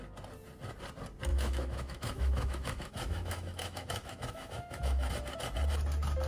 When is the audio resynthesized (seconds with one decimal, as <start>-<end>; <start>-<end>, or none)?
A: 1.3-5.1